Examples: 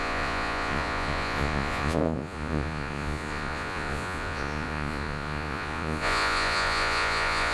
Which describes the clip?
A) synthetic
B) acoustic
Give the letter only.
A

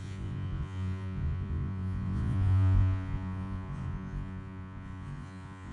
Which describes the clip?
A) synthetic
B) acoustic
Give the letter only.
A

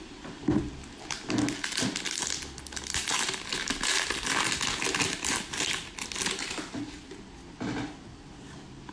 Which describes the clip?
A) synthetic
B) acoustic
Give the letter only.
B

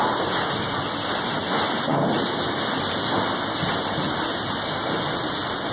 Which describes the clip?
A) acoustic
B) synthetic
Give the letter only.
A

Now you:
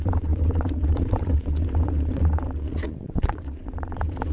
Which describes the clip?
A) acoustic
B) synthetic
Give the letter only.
B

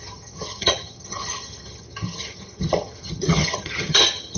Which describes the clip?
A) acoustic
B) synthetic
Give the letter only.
B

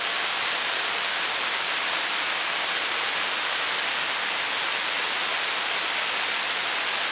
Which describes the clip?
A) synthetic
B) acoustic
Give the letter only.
B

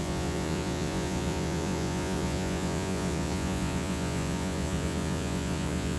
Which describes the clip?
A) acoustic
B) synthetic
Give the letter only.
B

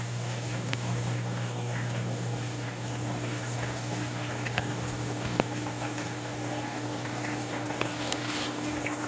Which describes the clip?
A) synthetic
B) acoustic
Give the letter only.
A